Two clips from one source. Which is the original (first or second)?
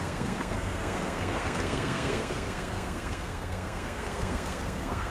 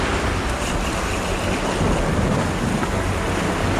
second